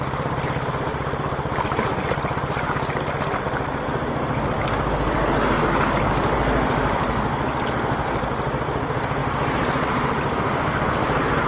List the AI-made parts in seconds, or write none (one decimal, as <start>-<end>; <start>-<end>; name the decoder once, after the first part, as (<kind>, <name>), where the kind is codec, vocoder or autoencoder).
0.9-3.4 (vocoder, BigVGAN v2)